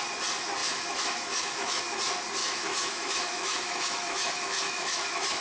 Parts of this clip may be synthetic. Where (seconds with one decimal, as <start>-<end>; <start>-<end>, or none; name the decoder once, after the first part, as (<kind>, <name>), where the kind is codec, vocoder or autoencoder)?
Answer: 0.6-1.8 (autoencoder, DAC-VAE); 2.4-5.4